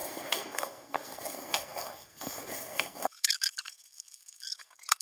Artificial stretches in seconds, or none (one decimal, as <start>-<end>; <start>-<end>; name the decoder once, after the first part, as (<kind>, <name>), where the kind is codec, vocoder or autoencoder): 0.0-5.0 (codec, SNAC)